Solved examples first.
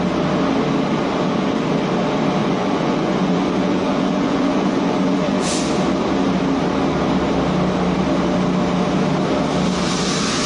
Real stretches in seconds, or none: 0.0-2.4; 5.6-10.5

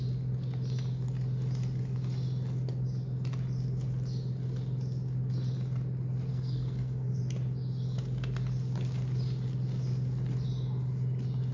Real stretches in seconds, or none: 0.0-6.3; 7.2-11.5